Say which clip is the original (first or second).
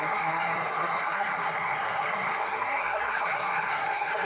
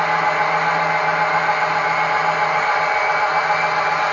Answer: second